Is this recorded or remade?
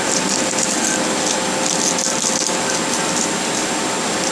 recorded